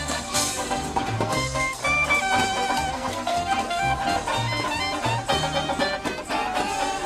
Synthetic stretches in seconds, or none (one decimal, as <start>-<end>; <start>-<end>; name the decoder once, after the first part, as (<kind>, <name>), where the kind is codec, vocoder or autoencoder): 0.0-1.8 (codec, SNAC); 2.9-4.0